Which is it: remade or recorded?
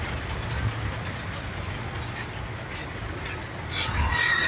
recorded